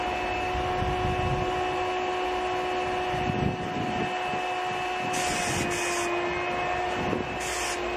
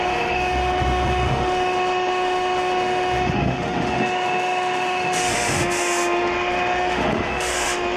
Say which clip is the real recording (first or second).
first